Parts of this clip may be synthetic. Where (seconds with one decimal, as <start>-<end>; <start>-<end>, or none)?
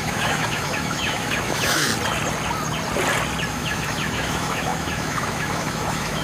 0.0-1.9; 3.5-6.2